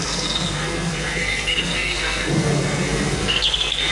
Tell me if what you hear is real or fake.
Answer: fake